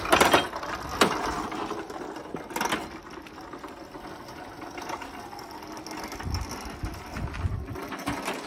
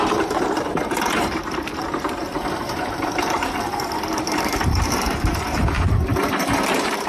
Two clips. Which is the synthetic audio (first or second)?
second